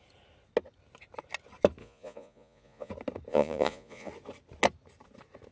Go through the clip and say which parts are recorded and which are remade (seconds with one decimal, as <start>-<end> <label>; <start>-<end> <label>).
0.0-1.8 recorded; 1.8-2.9 remade; 2.9-3.3 recorded; 3.3-4.1 remade; 4.1-5.5 recorded